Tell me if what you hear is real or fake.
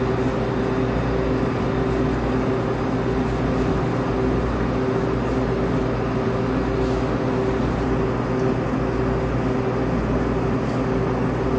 real